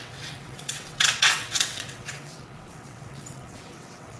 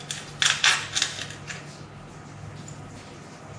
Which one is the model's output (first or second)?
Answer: first